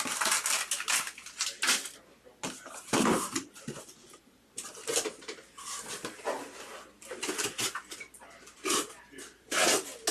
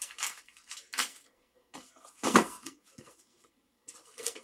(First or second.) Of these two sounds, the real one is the first